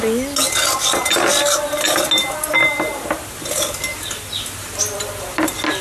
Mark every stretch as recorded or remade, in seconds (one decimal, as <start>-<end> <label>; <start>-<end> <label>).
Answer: 0.0-5.8 recorded